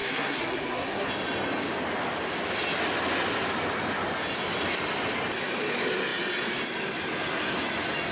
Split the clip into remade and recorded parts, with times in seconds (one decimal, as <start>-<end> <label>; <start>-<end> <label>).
0.0-1.1 remade; 1.1-8.1 recorded